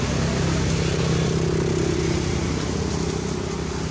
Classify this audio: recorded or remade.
recorded